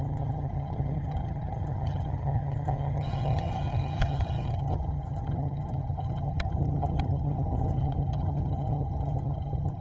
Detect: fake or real fake